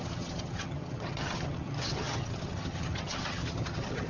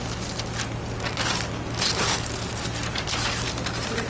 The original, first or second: second